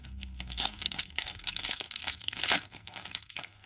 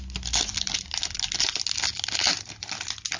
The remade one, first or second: first